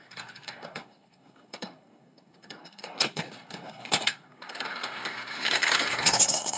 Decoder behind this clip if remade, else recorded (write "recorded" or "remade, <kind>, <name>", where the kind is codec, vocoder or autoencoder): remade, codec, SNAC